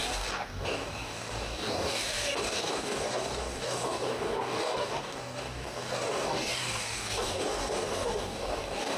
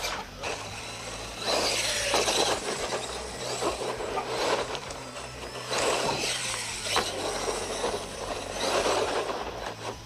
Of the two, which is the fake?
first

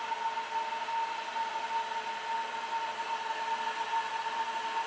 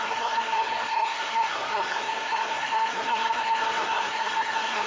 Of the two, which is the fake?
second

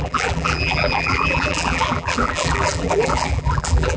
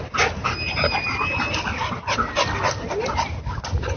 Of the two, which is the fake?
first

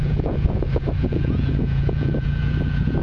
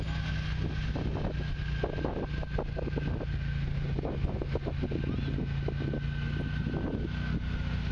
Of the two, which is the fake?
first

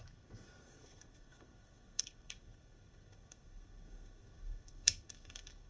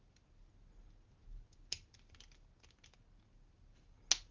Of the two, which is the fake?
first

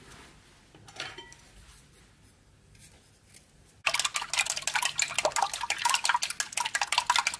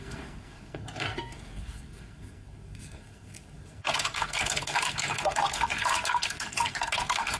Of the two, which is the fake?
second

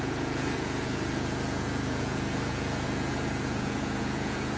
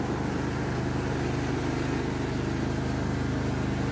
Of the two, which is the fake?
first